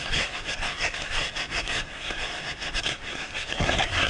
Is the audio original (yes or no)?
no